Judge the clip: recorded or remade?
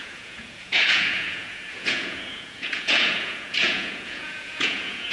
remade